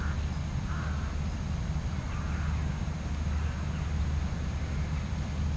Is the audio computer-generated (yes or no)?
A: no